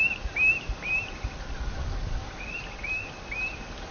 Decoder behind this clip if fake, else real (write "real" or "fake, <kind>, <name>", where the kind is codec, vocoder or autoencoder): real